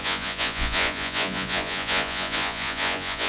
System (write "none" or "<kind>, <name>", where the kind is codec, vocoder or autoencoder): vocoder, Vocos